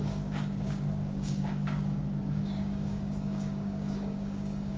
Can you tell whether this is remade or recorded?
remade